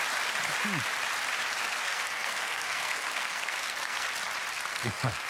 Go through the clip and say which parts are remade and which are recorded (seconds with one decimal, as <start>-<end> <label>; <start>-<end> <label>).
0.0-1.6 recorded; 1.6-4.1 remade; 4.1-4.7 recorded; 4.7-5.3 remade